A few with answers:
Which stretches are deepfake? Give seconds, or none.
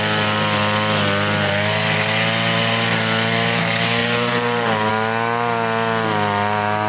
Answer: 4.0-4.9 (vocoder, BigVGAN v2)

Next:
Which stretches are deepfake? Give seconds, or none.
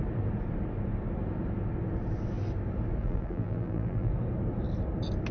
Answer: 3.0-4.1 (vocoder, BigVGAN v2)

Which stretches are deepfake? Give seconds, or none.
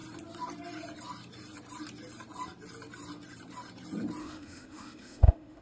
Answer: 4.2-5.6 (autoencoder, DAC-VAE)